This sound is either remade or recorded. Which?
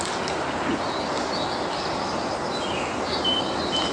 recorded